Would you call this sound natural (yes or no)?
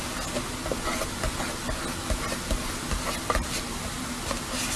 yes